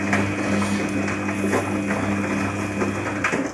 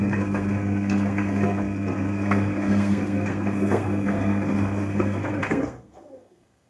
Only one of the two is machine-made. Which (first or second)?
second